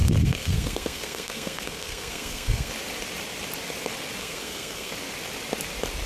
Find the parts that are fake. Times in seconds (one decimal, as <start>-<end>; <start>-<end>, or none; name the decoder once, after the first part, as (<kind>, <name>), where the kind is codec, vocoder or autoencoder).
0.0-2.7 (codec, SNAC); 4.2-4.9